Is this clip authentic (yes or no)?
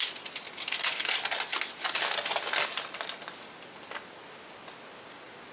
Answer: yes